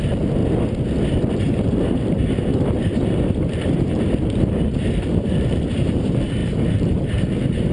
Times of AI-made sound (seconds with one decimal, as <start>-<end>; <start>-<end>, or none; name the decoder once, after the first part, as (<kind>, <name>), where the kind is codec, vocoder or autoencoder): 0.0-0.4 (vocoder, BigVGAN v2); 1.4-7.7